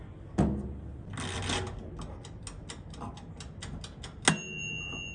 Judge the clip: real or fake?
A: real